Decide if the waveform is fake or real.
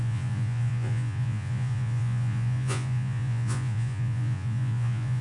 fake